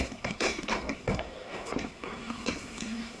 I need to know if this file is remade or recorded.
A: remade